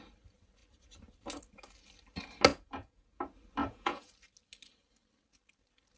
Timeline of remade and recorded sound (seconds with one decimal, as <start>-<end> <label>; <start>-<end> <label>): 0.0-2.5 recorded; 2.5-3.2 remade; 3.2-3.6 recorded; 3.6-4.1 remade; 4.1-6.0 recorded